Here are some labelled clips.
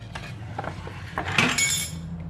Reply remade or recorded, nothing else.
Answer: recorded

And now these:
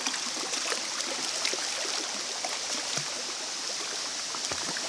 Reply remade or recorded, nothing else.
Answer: recorded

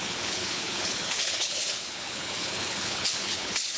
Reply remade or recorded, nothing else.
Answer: remade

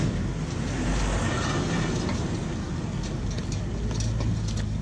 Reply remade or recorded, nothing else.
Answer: recorded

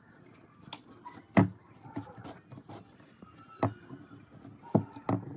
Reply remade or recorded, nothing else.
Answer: recorded